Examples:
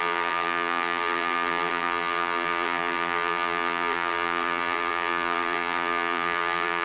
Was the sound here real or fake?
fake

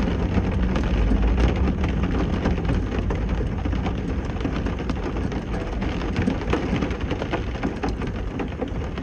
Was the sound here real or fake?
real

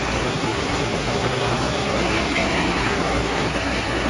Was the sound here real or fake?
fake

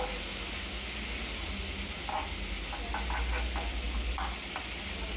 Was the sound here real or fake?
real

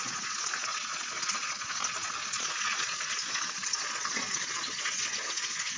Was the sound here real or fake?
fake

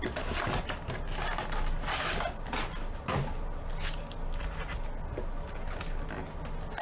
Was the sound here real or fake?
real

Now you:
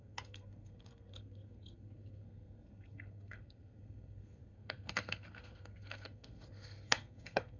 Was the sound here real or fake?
fake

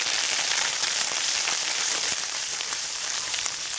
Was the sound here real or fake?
fake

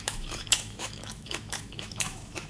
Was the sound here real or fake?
fake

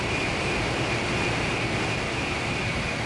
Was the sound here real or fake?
real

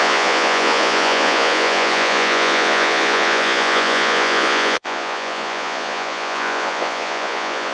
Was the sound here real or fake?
fake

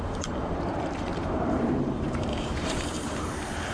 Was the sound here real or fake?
fake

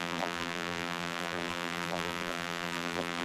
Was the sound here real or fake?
fake